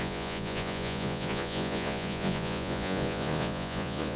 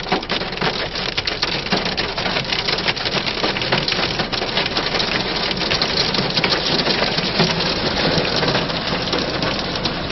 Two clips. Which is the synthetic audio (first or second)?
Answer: first